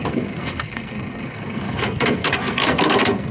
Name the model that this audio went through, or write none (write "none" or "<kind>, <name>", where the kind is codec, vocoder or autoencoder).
codec, SNAC